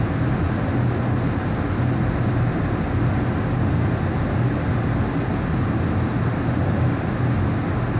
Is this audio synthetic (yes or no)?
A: no